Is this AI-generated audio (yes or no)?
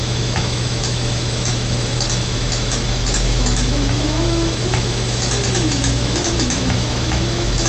yes